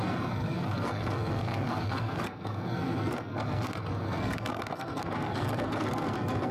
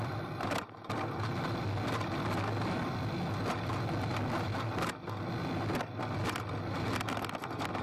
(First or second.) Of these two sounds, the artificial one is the first